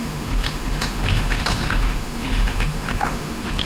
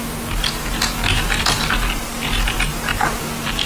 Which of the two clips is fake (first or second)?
first